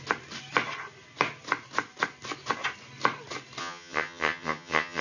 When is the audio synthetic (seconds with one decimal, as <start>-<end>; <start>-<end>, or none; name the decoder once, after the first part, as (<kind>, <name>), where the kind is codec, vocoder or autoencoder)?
3.6-5.0 (vocoder, HiFi-GAN)